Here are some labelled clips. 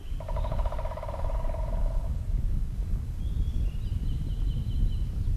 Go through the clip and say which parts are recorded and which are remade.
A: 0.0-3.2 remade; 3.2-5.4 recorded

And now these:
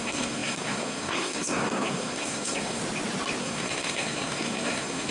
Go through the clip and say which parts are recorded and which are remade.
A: 0.0-2.8 remade; 2.8-3.4 recorded; 3.4-5.1 remade